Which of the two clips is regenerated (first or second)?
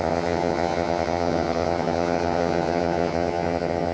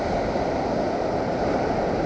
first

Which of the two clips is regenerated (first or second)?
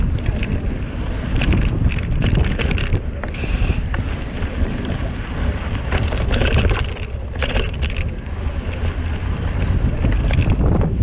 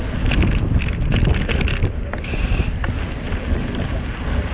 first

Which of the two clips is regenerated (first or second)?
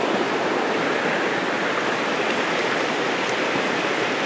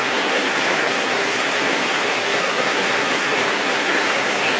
second